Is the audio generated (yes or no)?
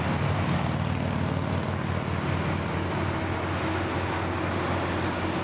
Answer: no